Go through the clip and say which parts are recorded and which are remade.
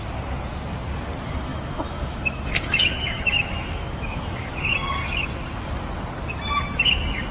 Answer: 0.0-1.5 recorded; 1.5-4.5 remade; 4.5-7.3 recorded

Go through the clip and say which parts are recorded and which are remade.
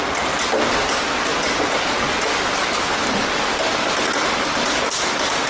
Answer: 0.0-5.5 recorded